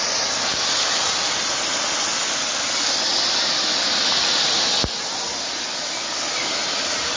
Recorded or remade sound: recorded